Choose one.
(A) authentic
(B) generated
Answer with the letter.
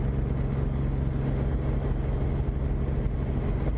A